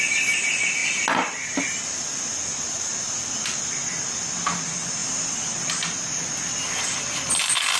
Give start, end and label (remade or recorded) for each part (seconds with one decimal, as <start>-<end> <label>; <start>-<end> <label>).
0.0-7.8 recorded